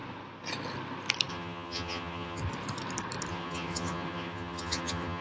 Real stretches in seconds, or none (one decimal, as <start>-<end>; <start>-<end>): 0.0-1.3; 2.4-3.3